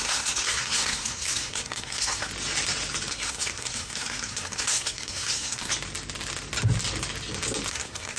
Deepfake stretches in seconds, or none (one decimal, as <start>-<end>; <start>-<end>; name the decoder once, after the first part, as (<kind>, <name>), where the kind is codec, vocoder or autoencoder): 0.0-2.3 (codec, SNAC); 3.1-5.7; 7.7-8.2